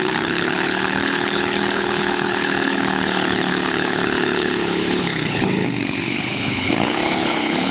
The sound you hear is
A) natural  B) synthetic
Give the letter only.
B